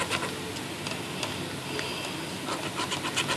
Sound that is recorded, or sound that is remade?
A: recorded